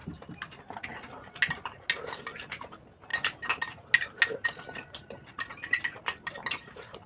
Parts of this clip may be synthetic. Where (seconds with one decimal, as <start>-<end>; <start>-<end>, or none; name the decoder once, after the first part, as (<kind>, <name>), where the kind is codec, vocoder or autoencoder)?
none